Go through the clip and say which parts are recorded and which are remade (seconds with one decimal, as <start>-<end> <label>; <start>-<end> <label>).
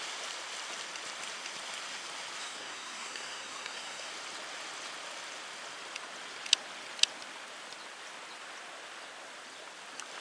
0.0-2.4 recorded; 2.4-4.1 remade; 4.1-10.2 recorded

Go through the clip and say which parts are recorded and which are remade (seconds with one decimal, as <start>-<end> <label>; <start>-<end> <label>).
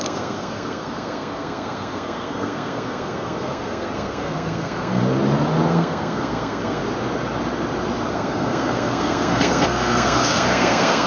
0.0-5.0 remade; 5.0-5.7 recorded; 5.7-6.8 remade; 6.8-8.1 recorded; 8.1-11.1 remade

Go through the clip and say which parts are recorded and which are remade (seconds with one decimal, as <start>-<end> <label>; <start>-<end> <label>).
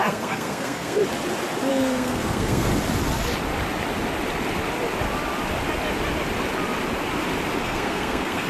0.0-1.0 remade; 1.0-1.7 recorded; 1.7-2.7 remade; 2.7-7.6 recorded; 7.6-8.5 remade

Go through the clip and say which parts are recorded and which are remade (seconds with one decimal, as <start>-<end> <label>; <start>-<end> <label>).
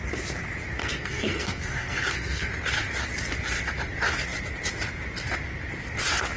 0.0-0.8 recorded; 0.8-2.5 remade; 2.5-6.4 recorded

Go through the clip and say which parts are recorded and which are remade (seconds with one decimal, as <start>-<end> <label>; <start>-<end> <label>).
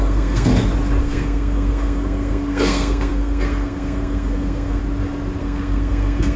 0.0-0.5 remade; 0.5-1.0 recorded; 1.0-4.8 remade; 4.8-5.4 recorded; 5.4-6.4 remade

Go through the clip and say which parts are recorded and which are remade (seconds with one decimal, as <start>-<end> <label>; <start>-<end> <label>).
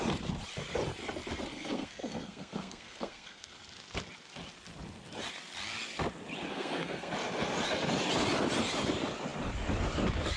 0.0-1.5 recorded; 1.5-3.5 remade; 3.5-6.5 recorded; 6.5-7.1 remade; 7.1-10.4 recorded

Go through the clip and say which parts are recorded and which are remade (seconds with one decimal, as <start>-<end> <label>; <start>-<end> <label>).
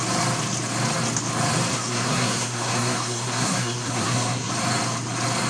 0.0-1.7 recorded; 1.7-4.5 remade; 4.5-5.5 recorded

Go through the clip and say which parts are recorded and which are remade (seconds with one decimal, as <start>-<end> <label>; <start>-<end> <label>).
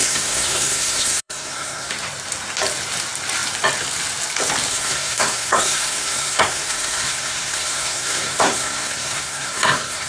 0.0-1.9 remade; 1.9-4.7 recorded; 4.7-10.1 remade